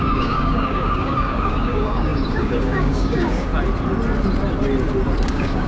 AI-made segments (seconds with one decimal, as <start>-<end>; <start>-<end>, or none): 0.0-3.5; 5.3-5.7